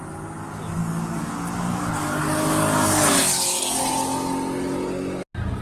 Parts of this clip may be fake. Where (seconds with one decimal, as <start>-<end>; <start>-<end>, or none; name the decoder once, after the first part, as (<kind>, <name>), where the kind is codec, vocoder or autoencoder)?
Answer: 0.8-3.8 (codec, DAC)